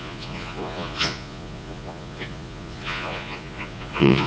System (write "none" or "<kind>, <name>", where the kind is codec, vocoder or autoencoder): vocoder, Vocos